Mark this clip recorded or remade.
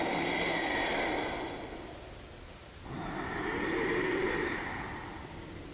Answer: recorded